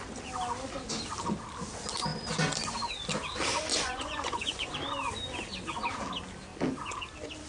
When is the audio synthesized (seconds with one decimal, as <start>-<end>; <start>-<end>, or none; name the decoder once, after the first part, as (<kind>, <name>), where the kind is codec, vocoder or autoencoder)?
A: 3.7-4.7 (vocoder, Vocos)